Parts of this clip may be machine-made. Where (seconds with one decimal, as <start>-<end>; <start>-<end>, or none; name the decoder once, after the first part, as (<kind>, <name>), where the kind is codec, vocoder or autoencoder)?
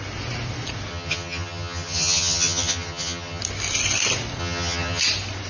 0.9-3.4 (vocoder, HiFi-GAN); 4.4-5.0